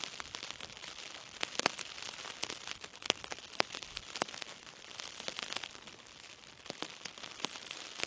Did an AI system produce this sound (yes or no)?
no